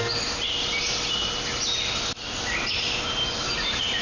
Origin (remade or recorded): recorded